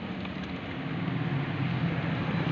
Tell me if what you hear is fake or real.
real